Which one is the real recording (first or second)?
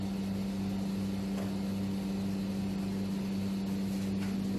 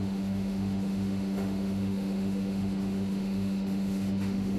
first